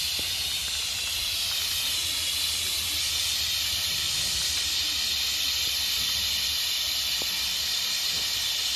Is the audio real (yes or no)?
no